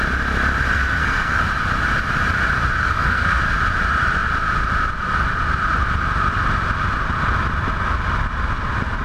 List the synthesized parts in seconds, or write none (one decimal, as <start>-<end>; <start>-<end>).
0.7-1.4; 2.8-3.4

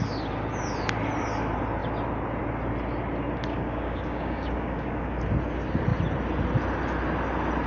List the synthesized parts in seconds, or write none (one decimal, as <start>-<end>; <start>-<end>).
3.5-5.2

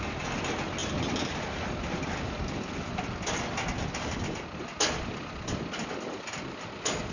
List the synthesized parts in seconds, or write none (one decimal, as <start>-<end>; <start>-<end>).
none